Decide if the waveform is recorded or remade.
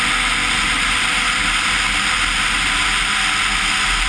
recorded